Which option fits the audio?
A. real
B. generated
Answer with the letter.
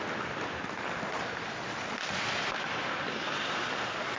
A